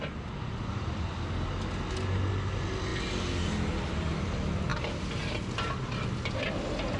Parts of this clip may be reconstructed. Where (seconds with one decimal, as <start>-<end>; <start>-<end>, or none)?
none